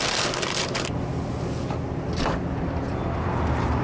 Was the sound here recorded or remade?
recorded